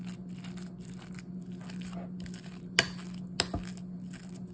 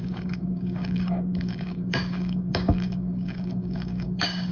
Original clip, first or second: first